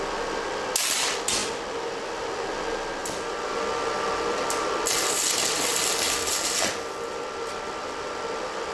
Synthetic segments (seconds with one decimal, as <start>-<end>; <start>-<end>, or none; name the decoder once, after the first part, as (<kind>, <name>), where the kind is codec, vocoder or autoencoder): none